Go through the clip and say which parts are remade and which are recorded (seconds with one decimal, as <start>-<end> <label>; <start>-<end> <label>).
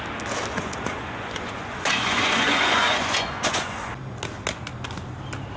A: 0.0-0.5 recorded; 0.5-3.9 remade; 3.9-5.6 recorded